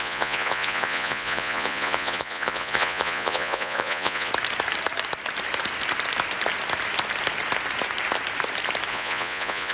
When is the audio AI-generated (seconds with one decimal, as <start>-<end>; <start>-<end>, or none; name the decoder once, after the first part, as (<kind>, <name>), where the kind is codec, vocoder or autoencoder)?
0.0-4.3 (vocoder, Vocos); 8.9-9.7